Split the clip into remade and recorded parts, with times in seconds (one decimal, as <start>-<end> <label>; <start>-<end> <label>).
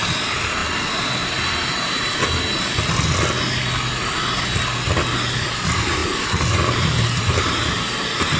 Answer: 0.0-8.4 recorded